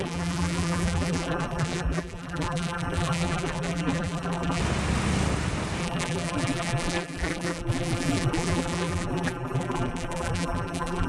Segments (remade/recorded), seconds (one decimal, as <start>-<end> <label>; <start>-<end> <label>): 0.0-4.6 remade; 4.6-5.8 recorded; 5.8-11.1 remade